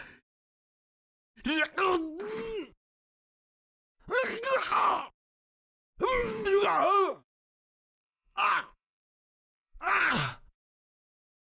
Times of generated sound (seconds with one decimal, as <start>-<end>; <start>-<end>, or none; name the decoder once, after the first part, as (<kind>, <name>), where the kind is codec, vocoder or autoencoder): 3.4-5.0 (vocoder, Vocos); 6.2-10.6